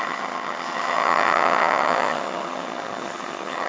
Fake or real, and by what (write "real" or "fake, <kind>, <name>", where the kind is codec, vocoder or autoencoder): fake, vocoder, HiFi-GAN